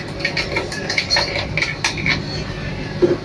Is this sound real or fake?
real